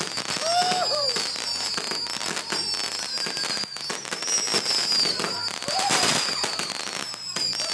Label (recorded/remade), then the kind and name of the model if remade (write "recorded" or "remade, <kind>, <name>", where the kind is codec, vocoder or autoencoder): recorded